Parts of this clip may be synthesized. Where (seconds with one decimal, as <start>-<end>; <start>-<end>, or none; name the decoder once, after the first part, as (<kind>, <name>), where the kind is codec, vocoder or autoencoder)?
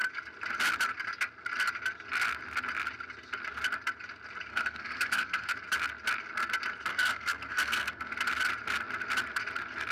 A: 4.5-5.5 (codec, SNAC); 6.9-8.1